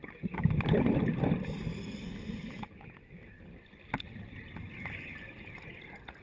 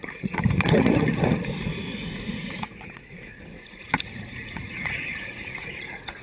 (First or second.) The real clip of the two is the first